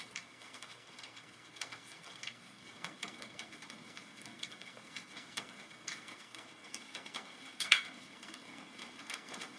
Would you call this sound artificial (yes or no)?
yes